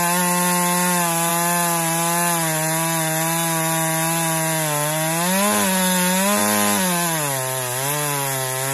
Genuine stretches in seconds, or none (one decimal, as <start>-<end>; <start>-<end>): 0.0-8.7